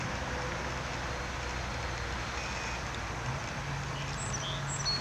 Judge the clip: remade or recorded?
recorded